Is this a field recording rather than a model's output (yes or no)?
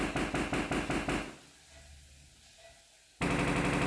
yes